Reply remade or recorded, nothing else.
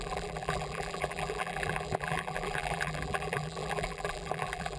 remade